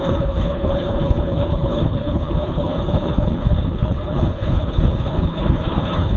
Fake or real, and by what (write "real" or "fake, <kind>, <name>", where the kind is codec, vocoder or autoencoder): fake, codec, HILCodec